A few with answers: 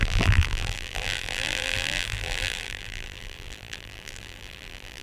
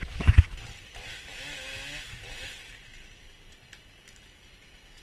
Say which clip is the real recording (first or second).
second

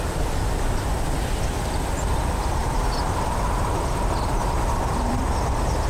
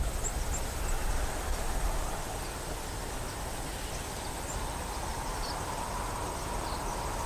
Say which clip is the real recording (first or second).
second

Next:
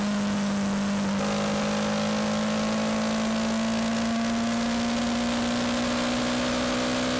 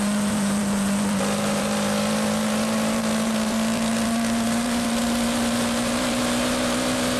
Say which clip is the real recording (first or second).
first